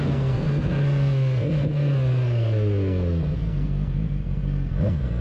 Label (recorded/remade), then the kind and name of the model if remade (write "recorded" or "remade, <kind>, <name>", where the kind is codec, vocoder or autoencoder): remade, codec, SNAC